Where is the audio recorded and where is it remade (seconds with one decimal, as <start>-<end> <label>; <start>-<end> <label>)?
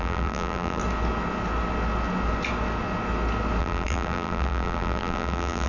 0.0-0.8 remade; 0.8-3.6 recorded; 3.6-5.7 remade